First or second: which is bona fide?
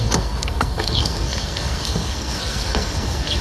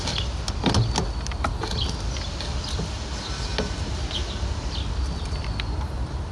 second